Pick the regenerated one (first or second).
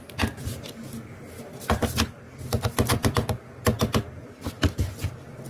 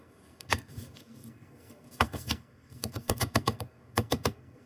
second